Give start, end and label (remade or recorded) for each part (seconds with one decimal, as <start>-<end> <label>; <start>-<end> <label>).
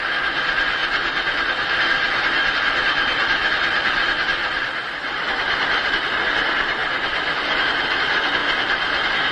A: 0.0-4.4 recorded; 4.4-5.9 remade; 5.9-6.8 recorded; 6.8-7.6 remade; 7.6-9.3 recorded